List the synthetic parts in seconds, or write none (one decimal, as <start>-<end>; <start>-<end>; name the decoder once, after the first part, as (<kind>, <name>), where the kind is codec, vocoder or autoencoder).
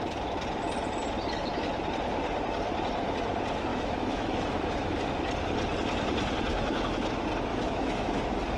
3.7-5.0 (autoencoder, DAC-VAE); 6.5-7.1; 7.5-8.2